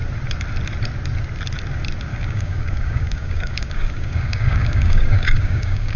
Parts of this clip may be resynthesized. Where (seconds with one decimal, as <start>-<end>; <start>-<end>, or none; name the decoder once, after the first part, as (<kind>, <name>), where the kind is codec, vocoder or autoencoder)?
2.1-6.0 (codec, DAC)